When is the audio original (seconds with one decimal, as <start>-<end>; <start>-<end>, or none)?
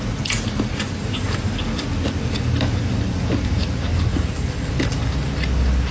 0.0-1.0; 1.5-4.1; 4.7-5.9